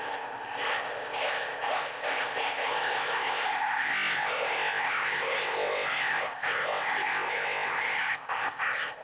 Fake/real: fake